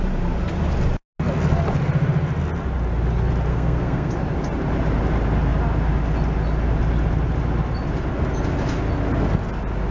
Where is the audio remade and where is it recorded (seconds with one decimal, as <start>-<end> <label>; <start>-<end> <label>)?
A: 0.0-3.5 recorded; 3.5-4.1 remade; 4.1-9.9 recorded